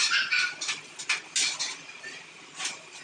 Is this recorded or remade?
recorded